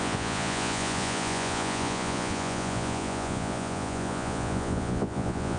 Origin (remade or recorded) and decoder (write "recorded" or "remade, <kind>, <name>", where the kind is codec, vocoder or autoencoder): remade, vocoder, Vocos